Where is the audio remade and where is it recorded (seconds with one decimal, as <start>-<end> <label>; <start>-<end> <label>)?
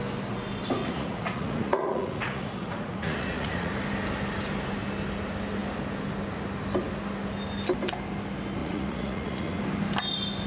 0.0-0.8 recorded; 0.8-3.7 remade; 3.7-8.6 recorded; 8.6-9.6 remade; 9.6-10.5 recorded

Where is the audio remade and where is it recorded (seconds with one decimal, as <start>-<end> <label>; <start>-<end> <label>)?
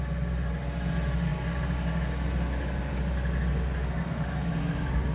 0.0-5.1 recorded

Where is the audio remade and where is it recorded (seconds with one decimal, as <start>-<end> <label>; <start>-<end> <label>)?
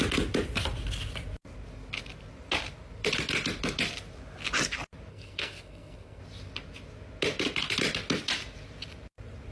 0.0-5.1 recorded; 5.1-6.2 remade; 6.2-9.5 recorded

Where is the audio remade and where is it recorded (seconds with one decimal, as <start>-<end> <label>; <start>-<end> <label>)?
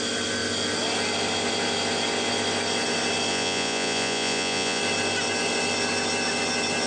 0.0-3.3 recorded; 3.3-4.8 remade; 4.8-6.9 recorded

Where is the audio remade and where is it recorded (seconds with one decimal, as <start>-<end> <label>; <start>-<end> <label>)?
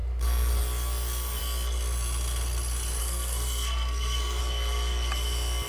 0.0-3.0 recorded; 3.0-4.4 remade; 4.4-5.7 recorded